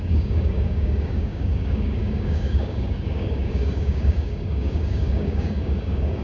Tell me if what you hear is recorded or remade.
remade